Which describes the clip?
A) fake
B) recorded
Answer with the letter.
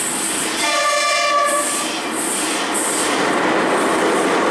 B